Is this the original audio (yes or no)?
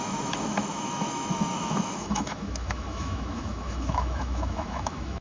no